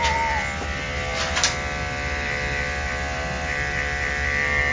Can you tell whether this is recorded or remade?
recorded